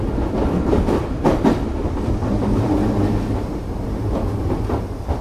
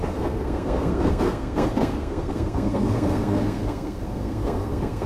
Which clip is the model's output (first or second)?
second